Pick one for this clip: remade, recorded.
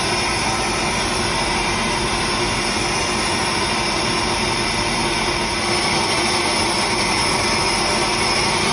recorded